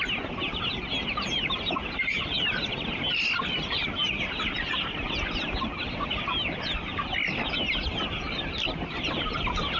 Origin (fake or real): real